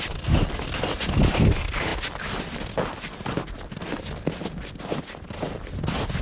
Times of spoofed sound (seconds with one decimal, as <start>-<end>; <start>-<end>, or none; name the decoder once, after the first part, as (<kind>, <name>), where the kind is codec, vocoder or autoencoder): none